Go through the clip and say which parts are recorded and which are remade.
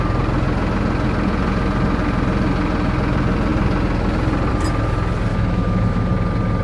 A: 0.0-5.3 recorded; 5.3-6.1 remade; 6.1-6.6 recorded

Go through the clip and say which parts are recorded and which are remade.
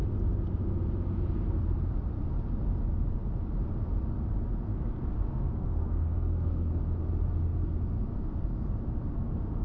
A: 0.0-4.7 recorded; 4.7-6.8 remade; 6.8-9.6 recorded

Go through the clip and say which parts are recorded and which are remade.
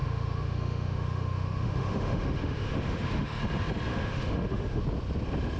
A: 0.0-3.4 remade; 3.4-3.9 recorded; 3.9-4.8 remade; 4.8-5.6 recorded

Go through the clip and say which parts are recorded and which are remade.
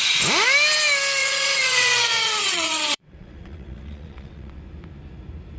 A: 0.0-1.2 recorded; 1.2-4.6 remade; 4.6-5.6 recorded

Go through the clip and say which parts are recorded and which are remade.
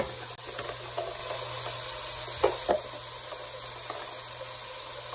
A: 0.0-5.1 recorded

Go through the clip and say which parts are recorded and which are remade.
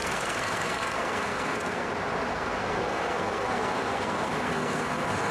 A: 0.0-1.9 remade; 1.9-2.3 recorded; 2.3-5.3 remade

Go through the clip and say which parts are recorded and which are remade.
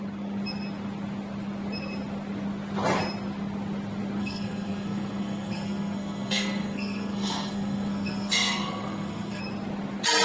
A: 0.0-4.2 recorded; 4.2-9.4 remade; 9.4-10.2 recorded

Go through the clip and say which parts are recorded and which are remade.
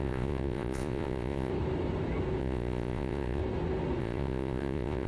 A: 0.0-1.5 remade; 1.5-2.4 recorded; 2.4-3.4 remade; 3.4-4.0 recorded; 4.0-5.1 remade